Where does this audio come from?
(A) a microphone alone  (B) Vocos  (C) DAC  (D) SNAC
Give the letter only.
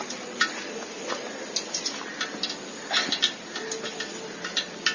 A